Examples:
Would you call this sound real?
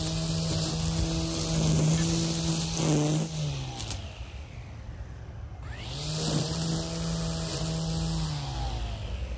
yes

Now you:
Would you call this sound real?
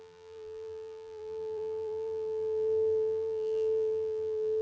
no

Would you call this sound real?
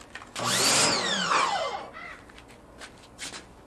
yes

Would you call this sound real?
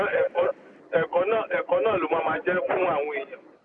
yes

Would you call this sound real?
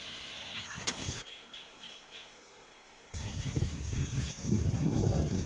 no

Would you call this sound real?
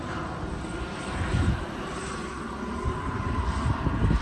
yes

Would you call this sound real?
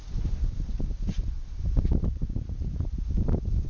yes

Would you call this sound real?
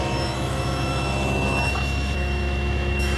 no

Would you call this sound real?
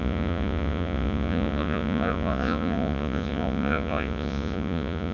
no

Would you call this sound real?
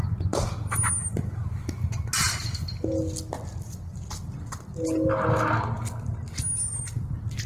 yes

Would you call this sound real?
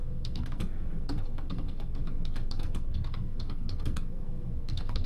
no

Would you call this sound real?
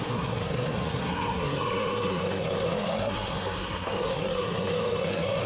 no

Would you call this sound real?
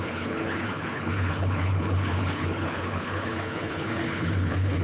no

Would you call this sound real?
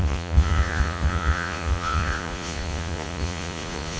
no